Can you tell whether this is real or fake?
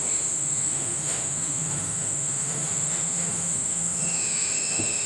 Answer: fake